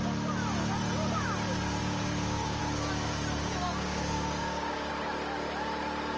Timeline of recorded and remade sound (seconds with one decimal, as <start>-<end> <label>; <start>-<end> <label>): 0.0-1.8 recorded; 1.8-2.6 remade; 2.6-3.6 recorded; 3.6-4.9 remade; 4.9-6.2 recorded